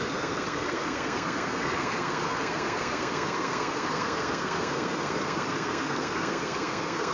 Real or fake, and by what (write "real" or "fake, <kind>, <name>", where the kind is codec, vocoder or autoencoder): fake, codec, SNAC